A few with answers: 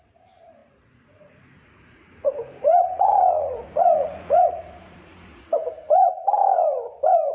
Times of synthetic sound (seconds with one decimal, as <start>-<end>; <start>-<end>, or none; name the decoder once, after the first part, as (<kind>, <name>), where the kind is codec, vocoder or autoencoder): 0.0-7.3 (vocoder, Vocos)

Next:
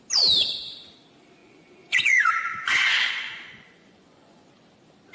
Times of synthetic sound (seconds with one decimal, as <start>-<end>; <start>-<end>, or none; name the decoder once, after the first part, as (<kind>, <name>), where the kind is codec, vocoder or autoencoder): 1.4-4.5 (vocoder, Vocos)

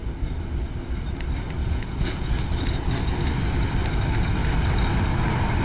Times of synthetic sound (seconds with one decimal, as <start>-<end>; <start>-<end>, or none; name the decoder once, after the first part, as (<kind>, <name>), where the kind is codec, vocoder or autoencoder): 1.6-2.3 (vocoder, Vocos)

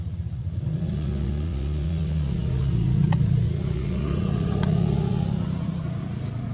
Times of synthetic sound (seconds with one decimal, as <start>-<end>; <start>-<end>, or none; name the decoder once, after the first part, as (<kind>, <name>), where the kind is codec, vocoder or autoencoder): 0.0-6.5 (vocoder, Vocos)